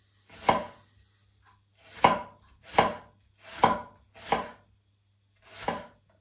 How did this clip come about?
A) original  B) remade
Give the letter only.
A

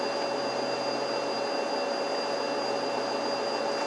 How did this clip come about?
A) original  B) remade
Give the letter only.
A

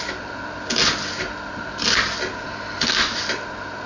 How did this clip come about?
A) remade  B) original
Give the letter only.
B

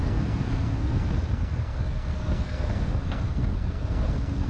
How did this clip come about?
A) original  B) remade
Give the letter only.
B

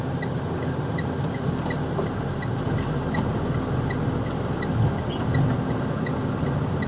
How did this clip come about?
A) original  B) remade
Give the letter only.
A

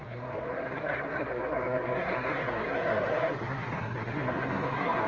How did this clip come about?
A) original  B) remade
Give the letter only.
B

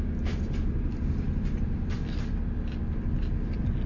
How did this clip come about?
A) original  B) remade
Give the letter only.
A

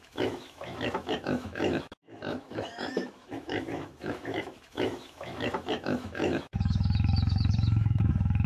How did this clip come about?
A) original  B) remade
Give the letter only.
B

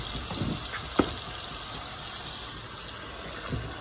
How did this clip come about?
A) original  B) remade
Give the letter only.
A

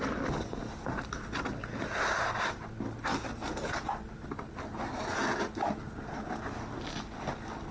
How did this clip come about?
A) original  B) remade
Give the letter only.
A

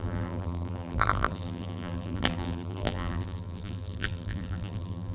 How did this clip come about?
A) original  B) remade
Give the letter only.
B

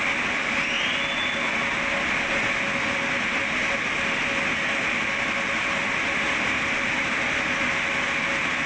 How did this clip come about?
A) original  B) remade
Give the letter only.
A